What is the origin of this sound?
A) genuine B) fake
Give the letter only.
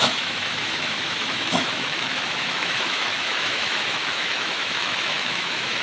B